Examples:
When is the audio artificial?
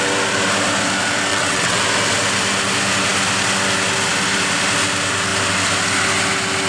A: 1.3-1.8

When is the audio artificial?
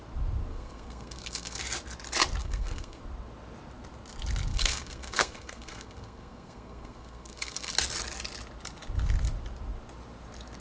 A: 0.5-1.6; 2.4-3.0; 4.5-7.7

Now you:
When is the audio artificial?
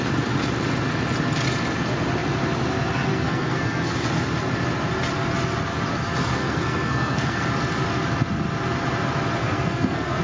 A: 3.1-3.9; 6.2-7.5; 9.4-10.2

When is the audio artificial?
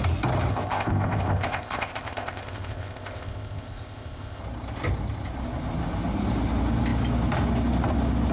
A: 0.5-4.4